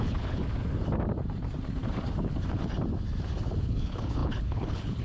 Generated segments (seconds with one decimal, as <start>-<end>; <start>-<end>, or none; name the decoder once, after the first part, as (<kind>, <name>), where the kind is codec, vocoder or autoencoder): 0.0-0.4 (codec, HILCodec); 3.4-5.0